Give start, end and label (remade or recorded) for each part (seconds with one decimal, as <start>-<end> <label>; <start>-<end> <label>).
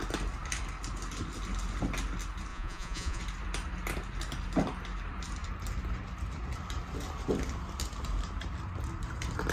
0.0-2.5 recorded; 2.5-3.2 remade; 3.2-9.5 recorded